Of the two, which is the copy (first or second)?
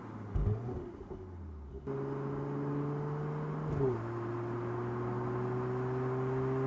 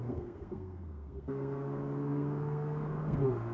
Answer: second